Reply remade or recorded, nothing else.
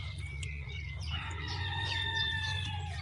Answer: remade